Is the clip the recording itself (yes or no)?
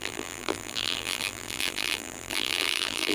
no